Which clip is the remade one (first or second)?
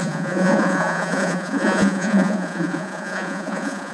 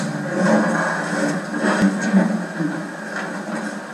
first